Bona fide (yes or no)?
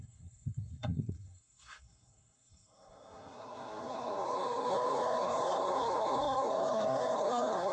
no